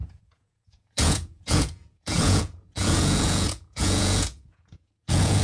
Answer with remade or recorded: remade